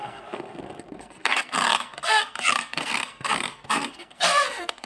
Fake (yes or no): yes